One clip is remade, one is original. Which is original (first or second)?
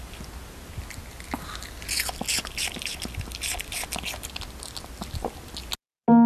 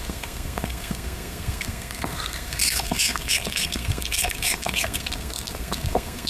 first